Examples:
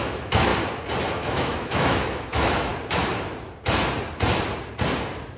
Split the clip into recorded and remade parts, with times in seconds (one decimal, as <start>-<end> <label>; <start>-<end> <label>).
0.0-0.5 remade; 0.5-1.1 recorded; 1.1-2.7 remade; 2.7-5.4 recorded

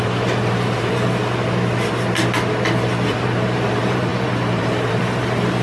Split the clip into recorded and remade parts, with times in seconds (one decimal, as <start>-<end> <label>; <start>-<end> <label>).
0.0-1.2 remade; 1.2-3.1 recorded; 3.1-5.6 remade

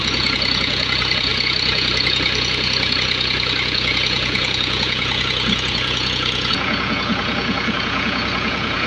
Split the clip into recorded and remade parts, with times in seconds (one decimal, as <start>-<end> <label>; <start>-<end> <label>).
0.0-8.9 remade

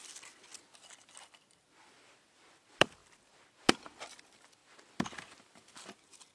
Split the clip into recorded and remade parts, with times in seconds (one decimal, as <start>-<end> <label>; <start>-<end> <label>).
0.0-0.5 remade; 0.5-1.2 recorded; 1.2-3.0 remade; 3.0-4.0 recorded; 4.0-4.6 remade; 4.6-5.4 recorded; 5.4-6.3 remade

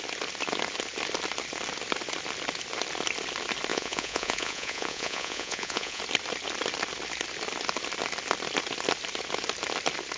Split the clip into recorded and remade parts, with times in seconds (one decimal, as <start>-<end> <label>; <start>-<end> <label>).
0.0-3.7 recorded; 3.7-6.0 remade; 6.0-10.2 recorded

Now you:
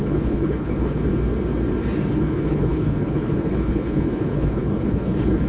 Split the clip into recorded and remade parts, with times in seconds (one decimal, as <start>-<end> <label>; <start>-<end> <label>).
0.0-1.1 remade; 1.1-2.1 recorded; 2.1-5.5 remade